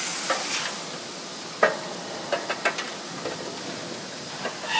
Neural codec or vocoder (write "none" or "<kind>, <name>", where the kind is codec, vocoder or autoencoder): none